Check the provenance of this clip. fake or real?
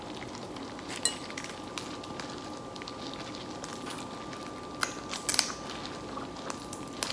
real